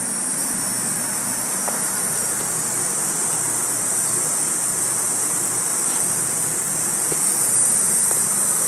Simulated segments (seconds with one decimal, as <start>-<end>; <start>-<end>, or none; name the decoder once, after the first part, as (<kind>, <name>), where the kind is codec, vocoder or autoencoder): none

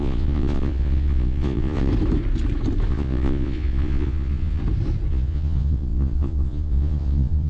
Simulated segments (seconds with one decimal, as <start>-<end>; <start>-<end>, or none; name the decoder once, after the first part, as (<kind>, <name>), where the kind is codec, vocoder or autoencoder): 0.0-1.9 (vocoder, Vocos); 2.9-4.6; 5.1-7.5

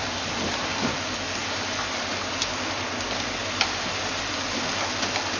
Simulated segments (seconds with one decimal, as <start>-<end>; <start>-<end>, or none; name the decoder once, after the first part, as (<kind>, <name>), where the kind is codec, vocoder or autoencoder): none